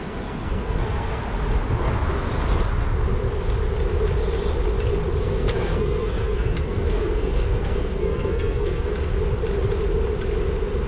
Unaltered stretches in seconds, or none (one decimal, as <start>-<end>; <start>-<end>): 1.2-5.2; 8.9-10.9